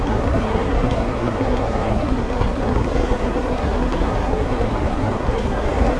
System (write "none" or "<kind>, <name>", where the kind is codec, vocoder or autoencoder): codec, SNAC